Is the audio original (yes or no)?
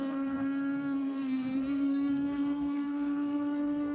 no